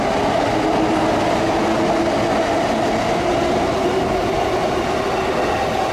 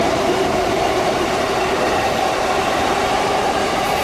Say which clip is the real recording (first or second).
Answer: first